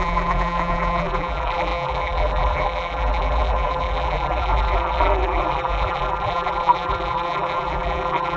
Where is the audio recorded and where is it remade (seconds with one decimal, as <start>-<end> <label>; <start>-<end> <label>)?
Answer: 0.0-8.4 remade